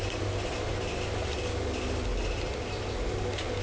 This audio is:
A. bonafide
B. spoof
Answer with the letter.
A